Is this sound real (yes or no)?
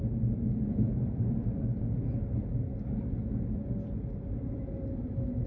yes